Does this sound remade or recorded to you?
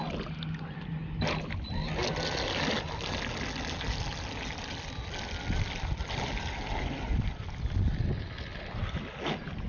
recorded